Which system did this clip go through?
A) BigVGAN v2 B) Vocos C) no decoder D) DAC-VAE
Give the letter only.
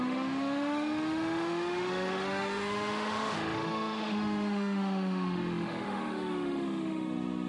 D